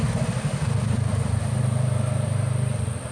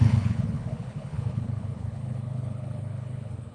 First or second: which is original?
first